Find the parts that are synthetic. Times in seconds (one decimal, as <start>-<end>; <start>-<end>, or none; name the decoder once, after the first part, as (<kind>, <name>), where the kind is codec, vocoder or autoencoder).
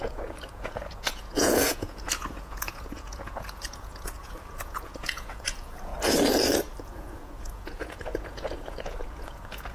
0.0-5.9 (vocoder, Vocos); 6.8-9.7